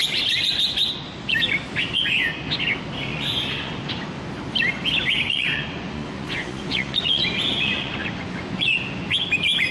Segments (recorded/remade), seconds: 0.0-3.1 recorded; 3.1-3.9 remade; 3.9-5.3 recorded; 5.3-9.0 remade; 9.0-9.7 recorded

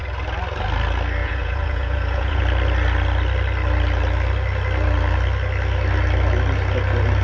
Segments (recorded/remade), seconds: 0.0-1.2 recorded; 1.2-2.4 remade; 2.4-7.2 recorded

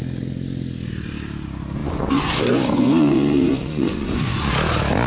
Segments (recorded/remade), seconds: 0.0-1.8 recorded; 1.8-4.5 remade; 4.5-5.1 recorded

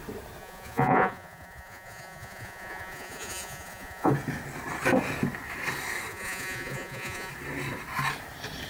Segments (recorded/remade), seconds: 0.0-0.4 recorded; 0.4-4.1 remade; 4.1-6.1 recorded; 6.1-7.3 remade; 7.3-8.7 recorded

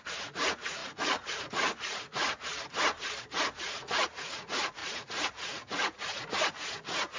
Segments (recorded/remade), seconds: 0.0-2.5 remade; 2.5-3.4 recorded; 3.4-7.2 remade

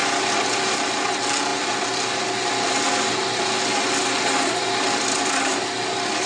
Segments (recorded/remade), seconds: 0.0-6.3 recorded

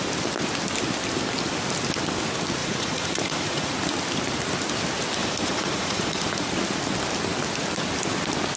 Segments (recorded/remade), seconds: 0.0-2.6 recorded; 2.6-3.7 remade; 3.7-5.2 recorded; 5.2-6.5 remade; 6.5-8.6 recorded